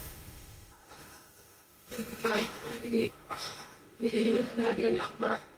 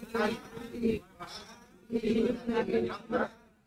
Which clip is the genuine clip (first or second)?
second